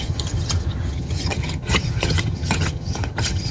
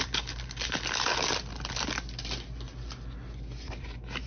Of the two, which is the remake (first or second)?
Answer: first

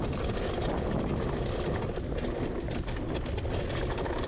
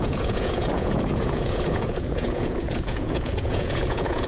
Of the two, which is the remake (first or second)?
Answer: second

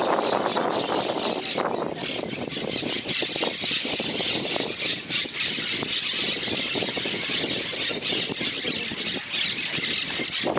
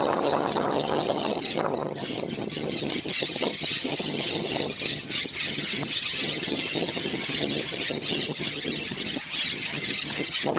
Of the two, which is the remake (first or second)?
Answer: second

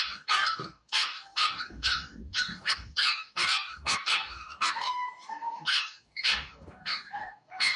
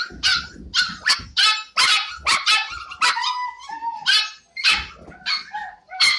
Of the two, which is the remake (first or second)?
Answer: first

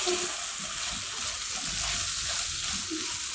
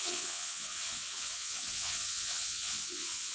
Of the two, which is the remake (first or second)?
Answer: second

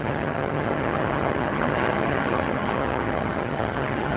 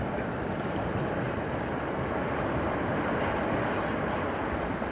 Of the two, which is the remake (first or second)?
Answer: first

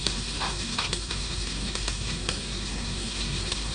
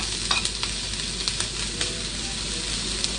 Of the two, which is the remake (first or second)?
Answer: first